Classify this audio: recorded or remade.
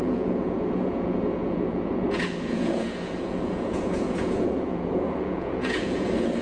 remade